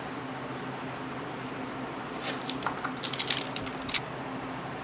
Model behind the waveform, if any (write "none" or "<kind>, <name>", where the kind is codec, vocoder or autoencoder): none